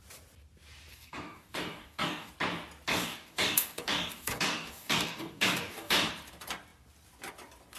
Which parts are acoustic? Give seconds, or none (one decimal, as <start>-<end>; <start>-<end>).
0.0-0.9; 2.3-2.9; 6.1-7.8